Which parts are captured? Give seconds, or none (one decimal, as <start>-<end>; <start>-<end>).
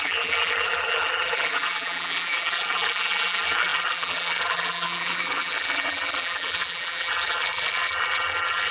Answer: none